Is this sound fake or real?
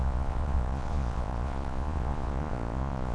fake